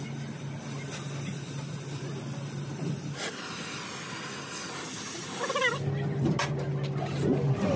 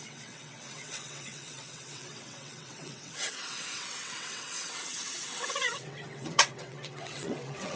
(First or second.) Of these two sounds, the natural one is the first